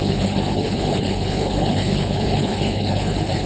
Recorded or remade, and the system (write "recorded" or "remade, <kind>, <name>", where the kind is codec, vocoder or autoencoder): remade, codec, HILCodec